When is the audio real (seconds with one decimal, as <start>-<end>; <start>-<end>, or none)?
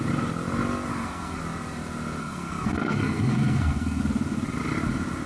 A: 0.0-0.9; 1.4-2.2; 4.0-5.3